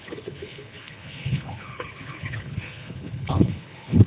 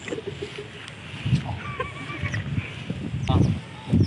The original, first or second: second